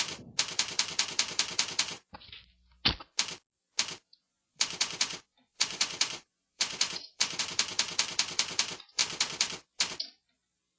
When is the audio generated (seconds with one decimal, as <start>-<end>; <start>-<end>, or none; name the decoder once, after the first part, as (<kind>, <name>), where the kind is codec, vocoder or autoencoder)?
4.1-7.4 (vocoder, Vocos)